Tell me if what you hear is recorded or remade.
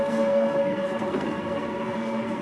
remade